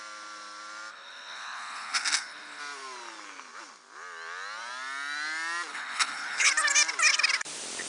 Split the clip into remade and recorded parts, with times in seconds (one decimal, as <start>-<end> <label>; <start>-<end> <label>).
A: 0.0-0.9 recorded; 0.9-2.6 remade; 2.6-5.7 recorded; 5.7-6.5 remade; 6.5-7.9 recorded